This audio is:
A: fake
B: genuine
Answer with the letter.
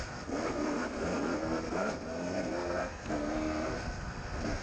A